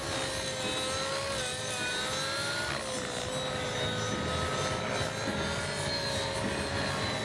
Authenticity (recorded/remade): recorded